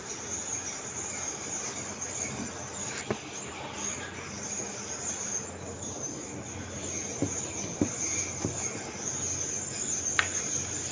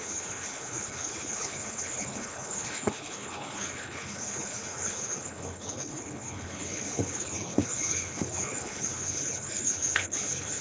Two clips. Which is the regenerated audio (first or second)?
second